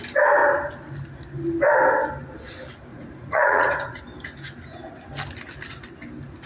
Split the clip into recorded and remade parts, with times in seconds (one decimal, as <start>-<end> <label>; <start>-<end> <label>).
0.0-2.9 recorded; 2.9-4.0 remade; 4.0-6.5 recorded